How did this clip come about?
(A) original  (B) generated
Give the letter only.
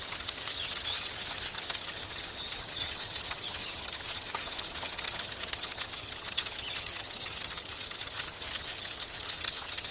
B